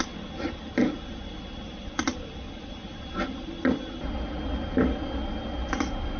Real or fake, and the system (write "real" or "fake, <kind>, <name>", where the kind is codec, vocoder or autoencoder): real